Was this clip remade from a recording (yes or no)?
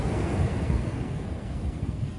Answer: yes